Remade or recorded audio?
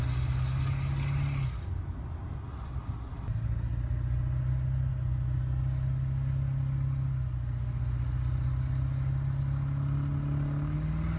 recorded